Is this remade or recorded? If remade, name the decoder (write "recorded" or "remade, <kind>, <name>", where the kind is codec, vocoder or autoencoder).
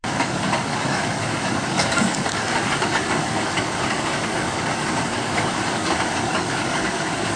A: remade, codec, DAC